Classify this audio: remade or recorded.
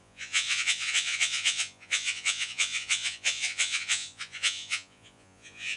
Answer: remade